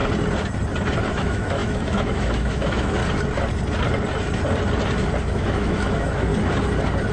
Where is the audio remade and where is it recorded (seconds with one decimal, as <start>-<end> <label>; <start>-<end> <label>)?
0.0-1.1 recorded; 1.1-3.0 remade; 3.0-5.2 recorded; 5.2-6.3 remade; 6.3-7.1 recorded